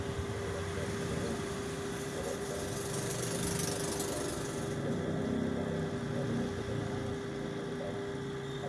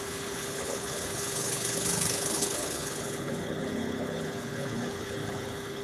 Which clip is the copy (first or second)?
second